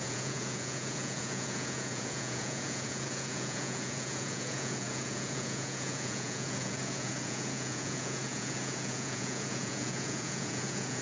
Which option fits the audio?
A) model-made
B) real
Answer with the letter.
A